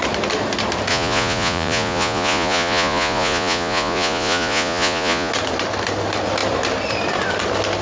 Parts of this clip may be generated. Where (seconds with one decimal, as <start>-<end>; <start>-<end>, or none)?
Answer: 0.9-5.3